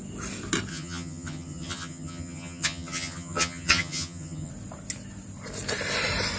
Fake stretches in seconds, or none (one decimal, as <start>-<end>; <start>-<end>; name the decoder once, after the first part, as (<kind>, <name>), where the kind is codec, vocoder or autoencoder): 0.7-4.5 (vocoder, HiFi-GAN)